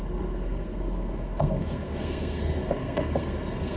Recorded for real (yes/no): no